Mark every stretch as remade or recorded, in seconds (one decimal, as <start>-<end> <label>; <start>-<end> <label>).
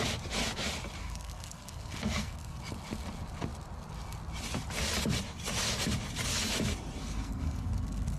0.0-1.0 recorded; 1.0-2.6 remade; 2.6-7.0 recorded; 7.0-8.2 remade